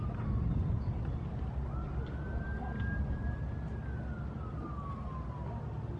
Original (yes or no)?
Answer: yes